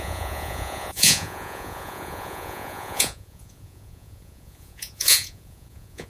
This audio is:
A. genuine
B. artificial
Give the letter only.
B